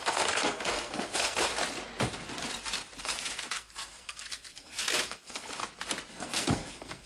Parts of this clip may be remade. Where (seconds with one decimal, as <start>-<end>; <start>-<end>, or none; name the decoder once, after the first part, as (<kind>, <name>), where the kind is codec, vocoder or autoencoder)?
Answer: 0.0-1.5 (codec, SNAC); 3.0-5.6; 6.1-7.1